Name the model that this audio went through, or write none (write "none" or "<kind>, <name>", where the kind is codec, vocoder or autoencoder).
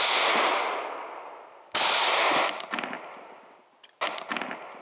none